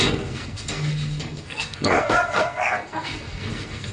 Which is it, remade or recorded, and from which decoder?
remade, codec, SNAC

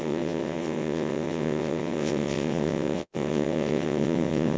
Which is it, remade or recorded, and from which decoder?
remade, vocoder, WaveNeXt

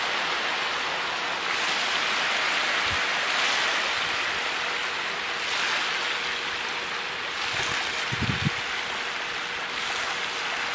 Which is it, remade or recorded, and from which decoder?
recorded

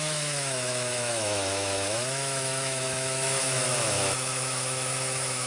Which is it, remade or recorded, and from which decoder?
remade, autoencoder, DAC-VAE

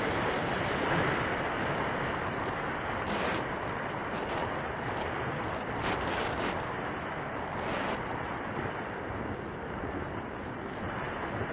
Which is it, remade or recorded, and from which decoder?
recorded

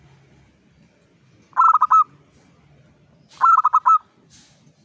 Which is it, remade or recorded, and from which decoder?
recorded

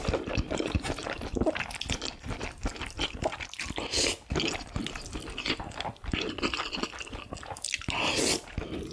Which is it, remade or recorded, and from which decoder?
recorded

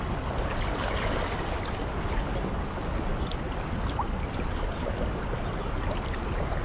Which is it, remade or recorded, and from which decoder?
recorded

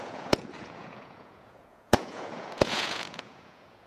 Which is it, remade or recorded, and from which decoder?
remade, vocoder, Vocos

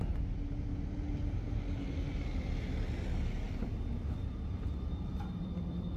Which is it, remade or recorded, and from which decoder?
recorded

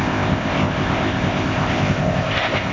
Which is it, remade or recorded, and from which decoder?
remade, codec, ZipCodec